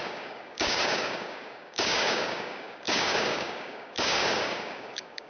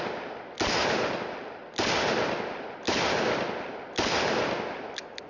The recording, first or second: second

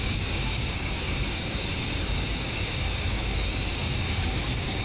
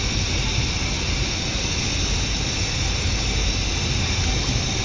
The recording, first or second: second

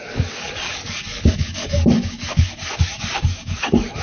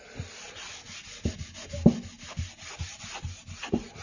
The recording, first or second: second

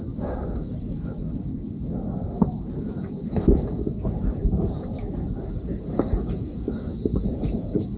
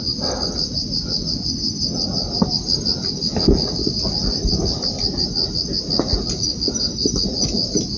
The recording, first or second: second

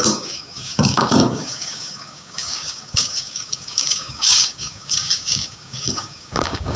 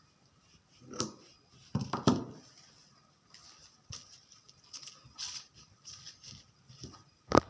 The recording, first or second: second